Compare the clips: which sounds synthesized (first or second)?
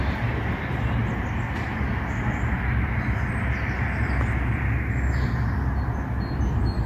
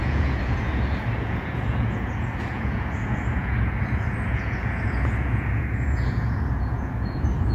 second